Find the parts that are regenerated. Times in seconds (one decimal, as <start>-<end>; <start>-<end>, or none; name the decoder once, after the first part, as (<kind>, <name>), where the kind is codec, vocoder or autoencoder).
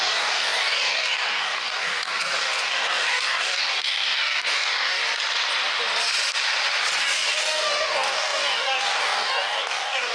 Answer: 0.0-5.0 (codec, DAC); 7.0-10.1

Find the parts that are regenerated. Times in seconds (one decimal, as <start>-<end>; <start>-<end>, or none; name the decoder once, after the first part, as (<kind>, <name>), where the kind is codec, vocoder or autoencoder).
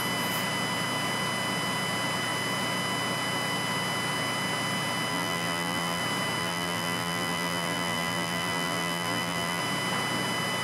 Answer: 5.1-6.0 (vocoder, BigVGAN v2); 6.4-9.6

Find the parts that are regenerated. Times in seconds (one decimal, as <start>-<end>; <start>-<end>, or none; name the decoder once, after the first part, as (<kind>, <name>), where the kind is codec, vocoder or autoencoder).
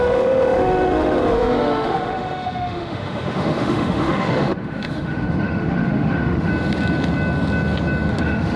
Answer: 0.0-6.5 (autoencoder, DAC-VAE); 8.1-8.6